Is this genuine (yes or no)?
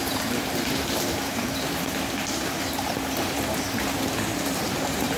no